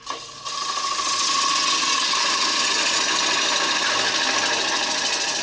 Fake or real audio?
real